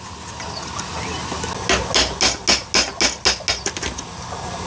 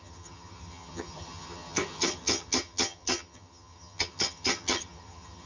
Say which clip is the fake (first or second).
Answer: second